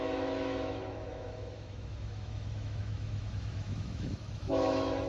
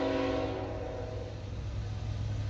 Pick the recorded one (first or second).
second